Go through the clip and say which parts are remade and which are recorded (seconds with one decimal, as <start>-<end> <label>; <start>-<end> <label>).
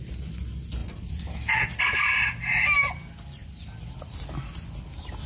0.0-0.8 recorded; 0.8-1.8 remade; 1.8-5.3 recorded